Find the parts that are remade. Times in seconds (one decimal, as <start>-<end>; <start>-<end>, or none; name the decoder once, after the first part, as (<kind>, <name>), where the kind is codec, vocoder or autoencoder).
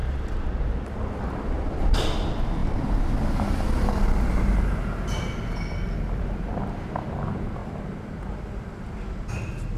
none